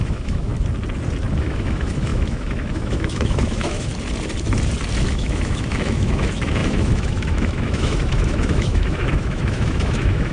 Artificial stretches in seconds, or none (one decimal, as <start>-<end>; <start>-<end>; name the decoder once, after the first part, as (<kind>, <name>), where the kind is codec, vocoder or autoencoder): 0.0-0.5 (autoencoder, DAC-VAE); 1.4-3.9; 5.1-10.3